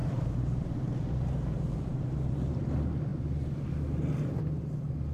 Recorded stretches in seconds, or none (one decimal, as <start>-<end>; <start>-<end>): 2.7-5.1

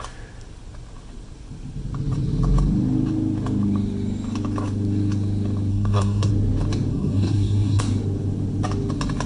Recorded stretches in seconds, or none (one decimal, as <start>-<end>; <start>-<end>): 0.0-5.7; 6.3-6.9; 7.8-9.3

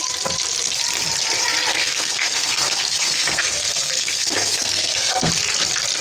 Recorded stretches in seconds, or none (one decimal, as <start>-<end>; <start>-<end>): 0.0-1.7; 5.3-6.0

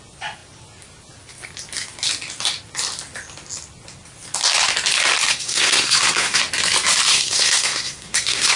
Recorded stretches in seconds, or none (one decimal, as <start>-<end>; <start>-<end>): 0.0-5.3; 6.4-7.1